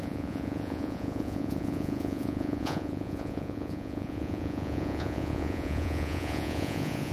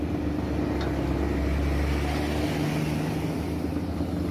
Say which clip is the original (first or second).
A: second